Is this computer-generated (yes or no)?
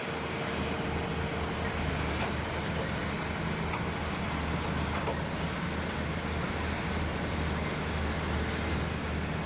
no